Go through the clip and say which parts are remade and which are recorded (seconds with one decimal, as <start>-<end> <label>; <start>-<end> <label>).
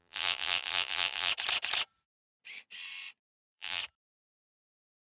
0.0-1.3 remade; 1.3-3.3 recorded; 3.3-3.8 remade; 3.8-5.1 recorded